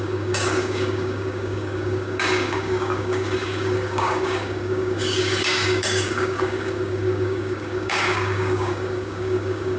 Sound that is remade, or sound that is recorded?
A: remade